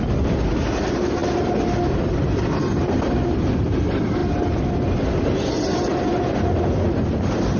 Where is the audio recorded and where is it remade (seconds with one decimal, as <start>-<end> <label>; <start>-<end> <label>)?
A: 0.0-7.6 recorded